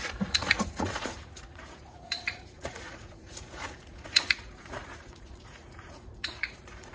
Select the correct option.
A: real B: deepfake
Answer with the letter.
B